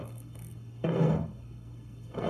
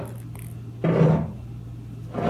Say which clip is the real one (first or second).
second